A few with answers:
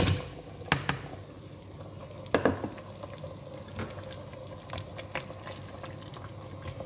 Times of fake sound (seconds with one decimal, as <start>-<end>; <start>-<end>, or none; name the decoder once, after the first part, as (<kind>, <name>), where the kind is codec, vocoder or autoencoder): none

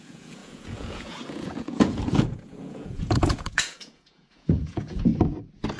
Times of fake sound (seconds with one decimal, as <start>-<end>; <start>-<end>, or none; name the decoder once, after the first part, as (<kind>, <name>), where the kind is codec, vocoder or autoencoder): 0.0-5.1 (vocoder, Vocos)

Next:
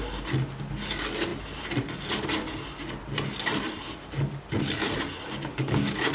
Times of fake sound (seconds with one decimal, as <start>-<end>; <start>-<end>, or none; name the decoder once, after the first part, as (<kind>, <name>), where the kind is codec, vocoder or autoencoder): 5.5-6.1 (codec, DAC)

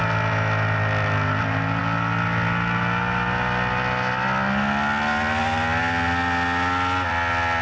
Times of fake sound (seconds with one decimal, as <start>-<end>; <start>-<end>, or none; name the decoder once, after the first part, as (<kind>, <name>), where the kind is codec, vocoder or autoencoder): none

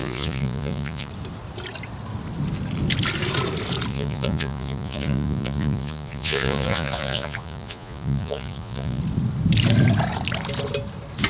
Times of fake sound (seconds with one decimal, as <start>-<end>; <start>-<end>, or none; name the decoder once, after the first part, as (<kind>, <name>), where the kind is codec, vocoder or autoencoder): 0.0-1.1 (vocoder, Vocos); 3.9-9.0